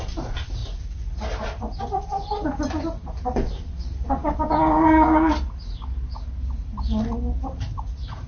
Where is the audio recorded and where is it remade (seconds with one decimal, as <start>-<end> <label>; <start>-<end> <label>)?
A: 0.0-4.2 recorded; 4.2-5.3 remade; 5.3-8.3 recorded